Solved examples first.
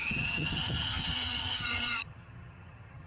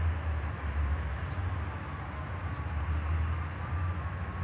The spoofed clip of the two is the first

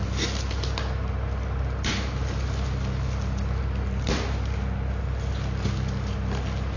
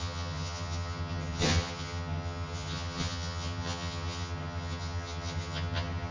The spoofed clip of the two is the second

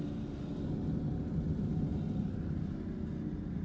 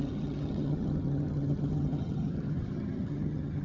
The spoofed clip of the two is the second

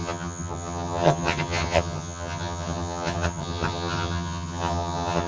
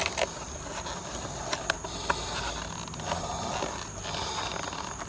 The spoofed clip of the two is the first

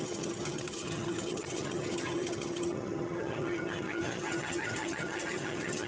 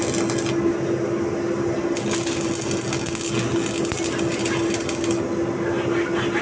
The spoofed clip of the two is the first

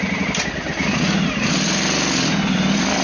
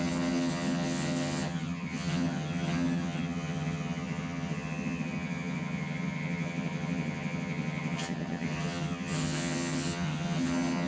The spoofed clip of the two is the second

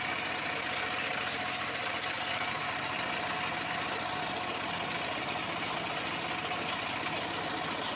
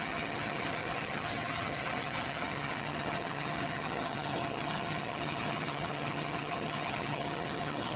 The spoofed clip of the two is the second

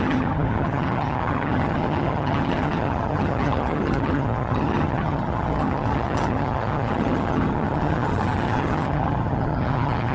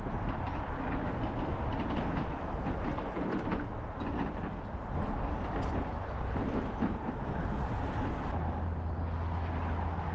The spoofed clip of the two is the first